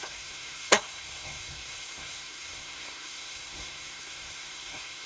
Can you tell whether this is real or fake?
fake